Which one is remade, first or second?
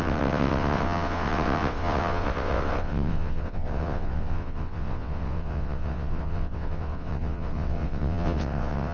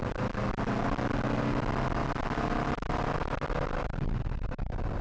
first